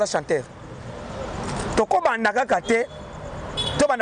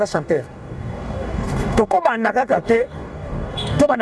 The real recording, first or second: first